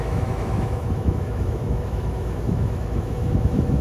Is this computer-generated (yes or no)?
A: yes